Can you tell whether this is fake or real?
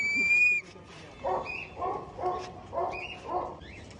real